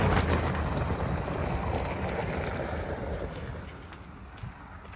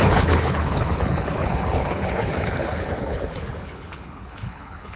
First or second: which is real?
first